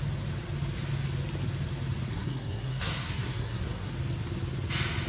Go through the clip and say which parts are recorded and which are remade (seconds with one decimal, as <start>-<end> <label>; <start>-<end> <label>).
0.0-2.1 recorded; 2.1-3.9 remade; 3.9-5.1 recorded